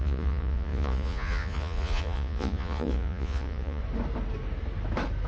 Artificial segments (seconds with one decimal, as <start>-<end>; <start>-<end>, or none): 0.0-3.8